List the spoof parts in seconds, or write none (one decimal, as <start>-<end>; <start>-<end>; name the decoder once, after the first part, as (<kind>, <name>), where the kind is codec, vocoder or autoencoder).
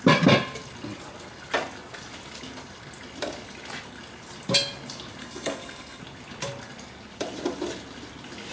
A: 5.2-6.0 (codec, SNAC)